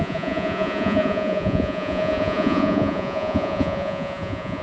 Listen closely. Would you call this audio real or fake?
fake